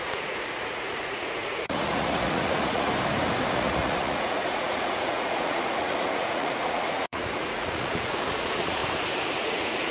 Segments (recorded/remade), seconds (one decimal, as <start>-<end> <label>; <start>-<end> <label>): 0.0-2.9 remade; 2.9-3.5 recorded; 3.5-8.8 remade; 8.8-9.3 recorded; 9.3-9.9 remade